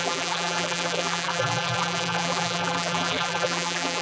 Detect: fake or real fake